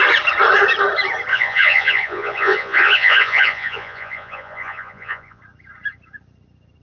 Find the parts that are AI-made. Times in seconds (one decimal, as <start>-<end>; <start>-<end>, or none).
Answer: 1.3-5.4